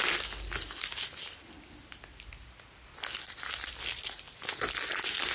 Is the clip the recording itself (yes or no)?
yes